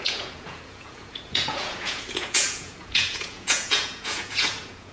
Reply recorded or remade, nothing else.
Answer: remade